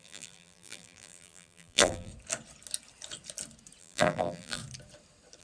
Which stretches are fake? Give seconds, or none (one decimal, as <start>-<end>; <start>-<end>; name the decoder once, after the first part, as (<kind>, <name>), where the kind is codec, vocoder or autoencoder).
0.0-2.1 (vocoder, BigVGAN v2); 3.8-4.6